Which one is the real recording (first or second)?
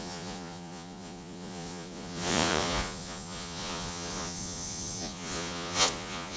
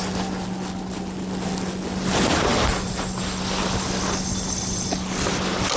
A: second